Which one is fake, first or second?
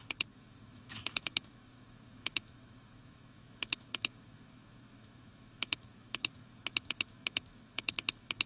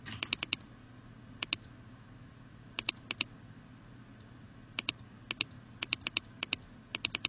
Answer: first